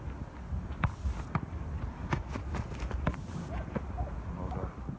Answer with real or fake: real